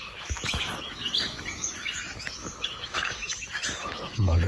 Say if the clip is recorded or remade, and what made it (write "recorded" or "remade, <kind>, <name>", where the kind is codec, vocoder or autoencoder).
remade, autoencoder, DAC-VAE